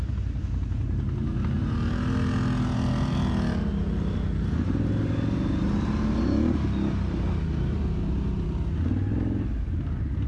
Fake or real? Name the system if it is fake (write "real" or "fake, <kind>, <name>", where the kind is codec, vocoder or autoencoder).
real